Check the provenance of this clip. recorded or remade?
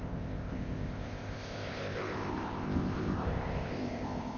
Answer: remade